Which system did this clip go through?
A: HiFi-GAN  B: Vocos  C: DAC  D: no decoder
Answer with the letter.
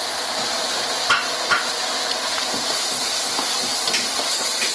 D